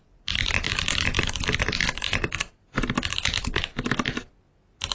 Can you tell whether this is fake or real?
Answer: real